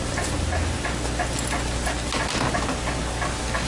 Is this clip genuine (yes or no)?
yes